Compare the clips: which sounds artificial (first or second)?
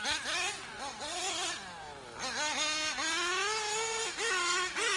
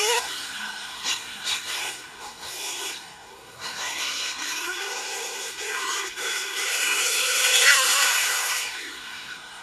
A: second